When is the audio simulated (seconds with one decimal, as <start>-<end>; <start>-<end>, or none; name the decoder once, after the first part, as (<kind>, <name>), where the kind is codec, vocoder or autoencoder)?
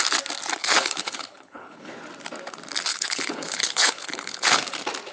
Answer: 0.6-1.9 (codec, HILCodec); 2.9-4.6